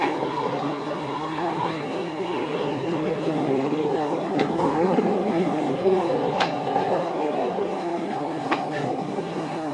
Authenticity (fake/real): fake